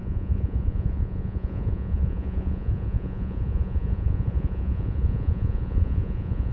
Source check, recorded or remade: remade